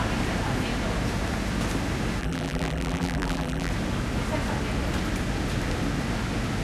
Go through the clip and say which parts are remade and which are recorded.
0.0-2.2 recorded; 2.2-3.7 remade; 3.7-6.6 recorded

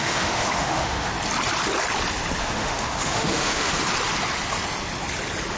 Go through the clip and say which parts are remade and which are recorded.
0.0-1.1 remade; 1.1-2.4 recorded; 2.4-3.7 remade; 3.7-5.6 recorded

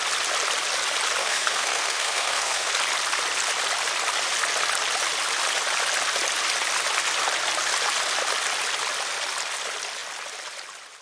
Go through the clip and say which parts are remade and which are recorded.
0.0-1.2 recorded; 1.2-2.7 remade; 2.7-11.0 recorded